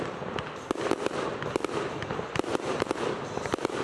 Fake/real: real